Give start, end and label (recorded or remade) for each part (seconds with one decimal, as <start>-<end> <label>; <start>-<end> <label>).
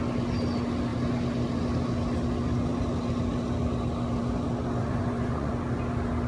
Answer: 0.0-4.8 recorded; 4.8-5.5 remade; 5.5-6.3 recorded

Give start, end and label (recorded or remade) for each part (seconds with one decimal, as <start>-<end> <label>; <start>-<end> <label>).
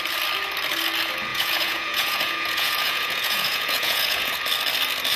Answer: 0.0-1.3 recorded; 1.3-4.4 remade; 4.4-5.2 recorded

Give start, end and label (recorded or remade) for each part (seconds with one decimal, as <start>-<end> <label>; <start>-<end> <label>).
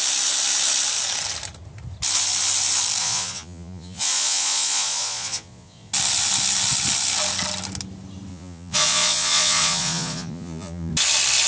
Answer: 0.0-3.0 recorded; 3.0-5.9 remade; 5.9-8.3 recorded; 8.3-10.9 remade; 10.9-11.5 recorded